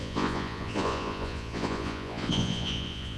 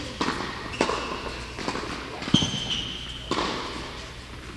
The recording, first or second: second